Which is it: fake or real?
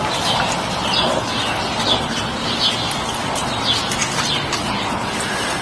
real